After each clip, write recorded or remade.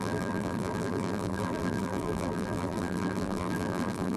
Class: remade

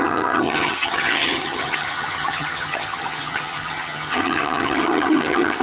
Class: remade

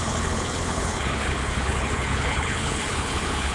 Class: remade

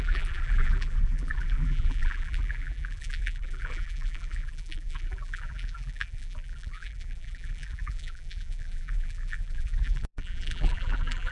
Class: remade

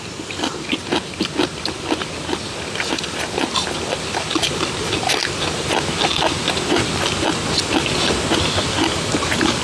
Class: recorded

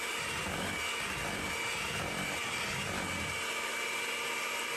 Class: recorded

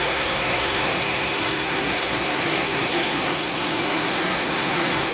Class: remade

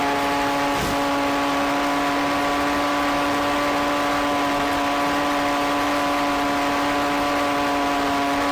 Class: remade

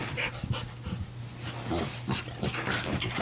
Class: recorded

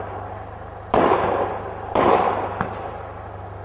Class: remade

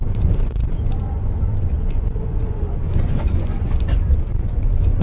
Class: remade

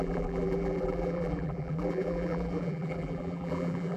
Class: remade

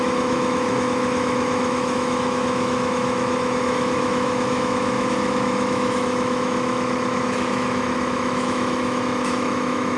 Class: remade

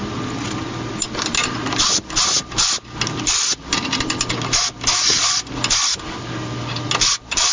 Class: recorded